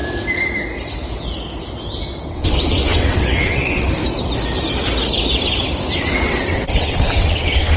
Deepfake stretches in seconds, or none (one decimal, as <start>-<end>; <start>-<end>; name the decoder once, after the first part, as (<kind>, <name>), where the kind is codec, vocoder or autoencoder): 2.3-4.0 (vocoder, WaveNeXt); 6.0-7.8